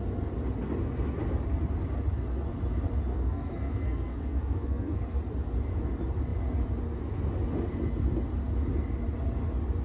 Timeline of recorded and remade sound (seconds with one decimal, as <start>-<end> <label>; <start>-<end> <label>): 0.0-3.1 recorded; 3.1-5.2 remade; 5.2-9.8 recorded